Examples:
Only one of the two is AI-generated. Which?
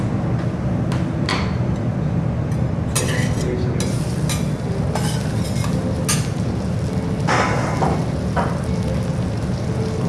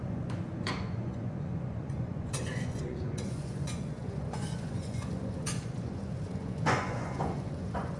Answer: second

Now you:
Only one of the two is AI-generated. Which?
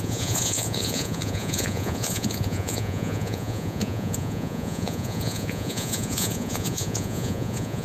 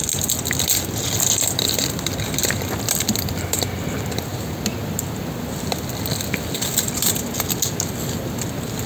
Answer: first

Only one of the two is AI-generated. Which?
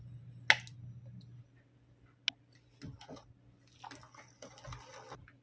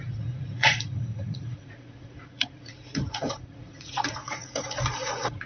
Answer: second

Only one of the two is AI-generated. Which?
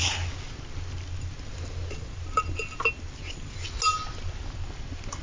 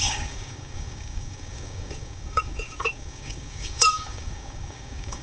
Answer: second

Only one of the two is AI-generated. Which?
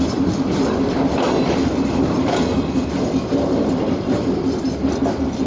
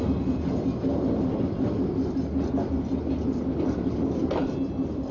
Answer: first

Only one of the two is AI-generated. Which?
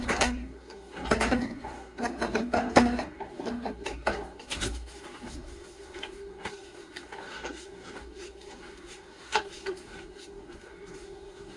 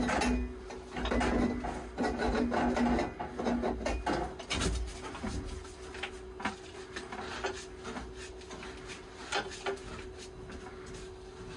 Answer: first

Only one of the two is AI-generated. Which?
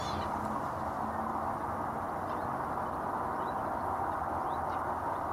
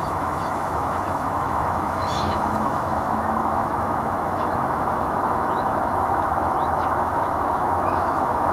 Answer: second